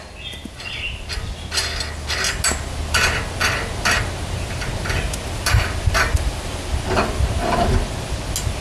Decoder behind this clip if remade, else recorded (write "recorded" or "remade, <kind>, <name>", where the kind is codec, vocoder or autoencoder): recorded